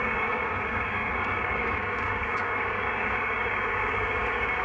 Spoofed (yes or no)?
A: yes